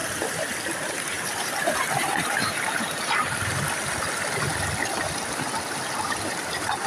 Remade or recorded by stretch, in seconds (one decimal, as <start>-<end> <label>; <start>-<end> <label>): 0.0-3.5 remade; 3.5-5.0 recorded; 5.0-6.9 remade